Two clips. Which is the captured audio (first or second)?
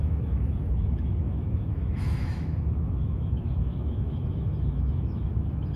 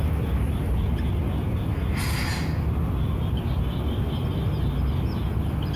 second